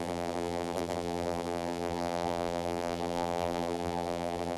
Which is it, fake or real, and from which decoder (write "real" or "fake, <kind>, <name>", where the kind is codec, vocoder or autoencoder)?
fake, vocoder, BigVGAN v2